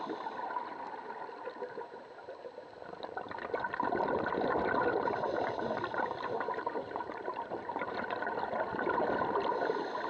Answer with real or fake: real